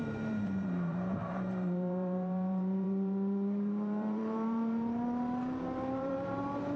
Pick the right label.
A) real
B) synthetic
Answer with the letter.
B